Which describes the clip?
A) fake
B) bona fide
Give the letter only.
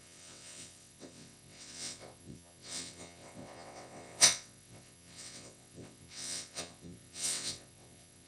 A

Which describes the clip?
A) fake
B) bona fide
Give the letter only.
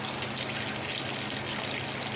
B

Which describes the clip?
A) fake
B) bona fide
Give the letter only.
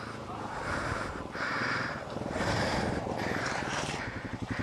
A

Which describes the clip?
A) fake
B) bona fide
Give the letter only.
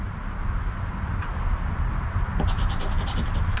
B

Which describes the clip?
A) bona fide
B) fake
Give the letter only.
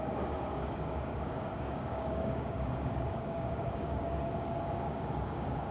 B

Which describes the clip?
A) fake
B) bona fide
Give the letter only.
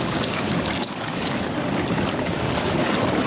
A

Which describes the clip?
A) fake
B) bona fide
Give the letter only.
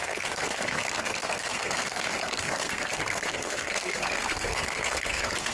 A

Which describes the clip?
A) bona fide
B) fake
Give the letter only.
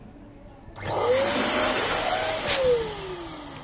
A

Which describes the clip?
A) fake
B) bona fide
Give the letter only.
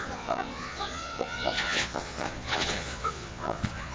A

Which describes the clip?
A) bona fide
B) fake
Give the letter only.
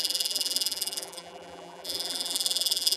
B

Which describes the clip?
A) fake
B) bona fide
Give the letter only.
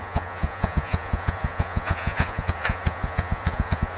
A